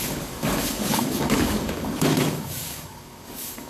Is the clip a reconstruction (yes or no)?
yes